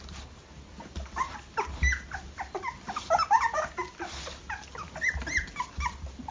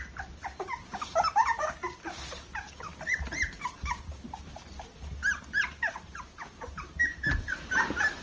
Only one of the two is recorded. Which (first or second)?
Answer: first